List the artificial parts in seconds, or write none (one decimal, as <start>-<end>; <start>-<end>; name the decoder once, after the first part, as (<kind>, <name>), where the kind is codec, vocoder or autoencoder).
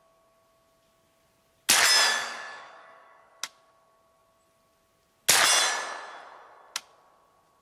2.2-3.3 (codec, DAC)